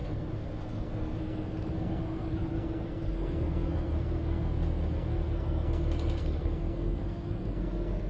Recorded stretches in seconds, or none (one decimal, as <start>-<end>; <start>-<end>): none